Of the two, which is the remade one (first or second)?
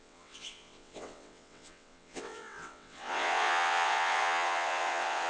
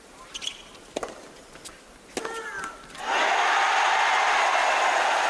first